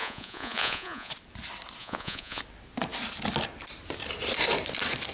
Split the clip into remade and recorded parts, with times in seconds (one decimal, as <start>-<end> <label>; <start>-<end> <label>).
0.0-1.1 remade; 1.1-1.8 recorded; 1.8-2.4 remade; 2.4-5.1 recorded